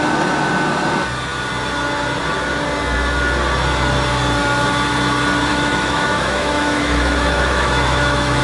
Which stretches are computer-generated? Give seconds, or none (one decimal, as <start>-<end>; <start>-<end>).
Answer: 5.5-8.4